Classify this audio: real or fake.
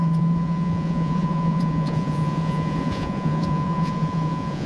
fake